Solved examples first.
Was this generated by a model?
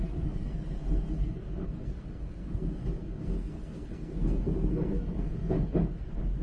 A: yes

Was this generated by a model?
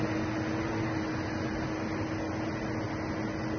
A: no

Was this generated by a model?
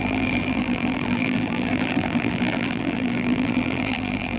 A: yes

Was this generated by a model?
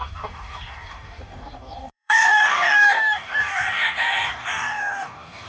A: yes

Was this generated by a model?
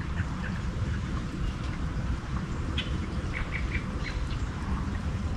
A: yes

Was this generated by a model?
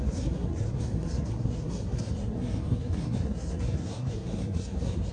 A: yes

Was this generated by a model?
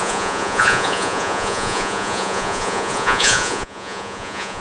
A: yes